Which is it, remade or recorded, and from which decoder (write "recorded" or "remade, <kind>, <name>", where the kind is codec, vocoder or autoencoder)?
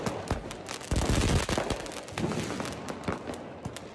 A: recorded